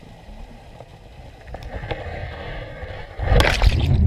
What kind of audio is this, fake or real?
real